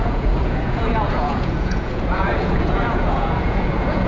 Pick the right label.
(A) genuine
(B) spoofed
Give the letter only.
B